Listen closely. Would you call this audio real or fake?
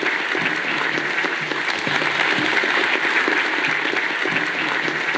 fake